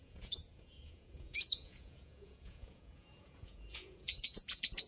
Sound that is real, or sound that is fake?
fake